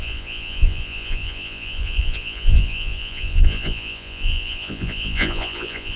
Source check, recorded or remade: remade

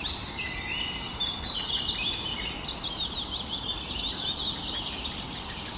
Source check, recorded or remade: recorded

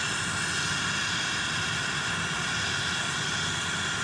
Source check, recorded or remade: recorded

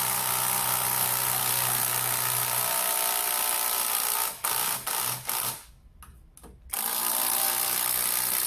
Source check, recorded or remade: recorded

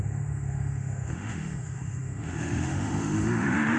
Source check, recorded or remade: remade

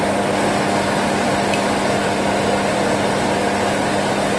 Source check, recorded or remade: recorded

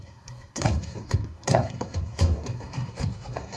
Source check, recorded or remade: remade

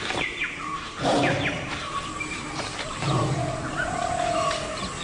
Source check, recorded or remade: remade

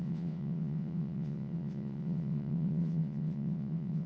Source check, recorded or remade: remade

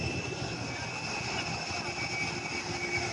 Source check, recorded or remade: recorded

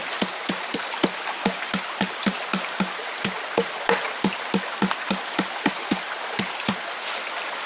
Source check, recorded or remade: recorded